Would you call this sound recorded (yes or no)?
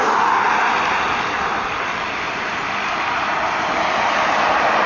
yes